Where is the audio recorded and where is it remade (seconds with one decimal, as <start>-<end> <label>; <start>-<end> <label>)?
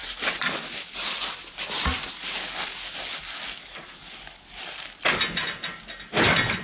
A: 0.0-6.6 recorded